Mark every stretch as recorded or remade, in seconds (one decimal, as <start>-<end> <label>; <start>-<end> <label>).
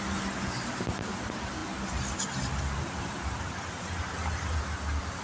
0.0-5.2 recorded